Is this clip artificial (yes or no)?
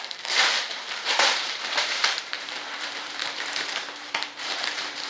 yes